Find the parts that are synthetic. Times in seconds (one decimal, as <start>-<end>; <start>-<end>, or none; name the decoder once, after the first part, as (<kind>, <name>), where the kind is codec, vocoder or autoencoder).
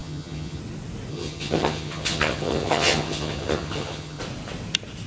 0.0-0.6 (vocoder, HiFi-GAN); 1.1-4.2